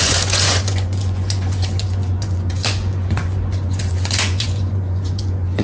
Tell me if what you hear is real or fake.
fake